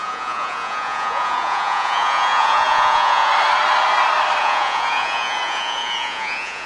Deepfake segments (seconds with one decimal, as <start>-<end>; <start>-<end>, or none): 0.0-3.3; 4.4-6.7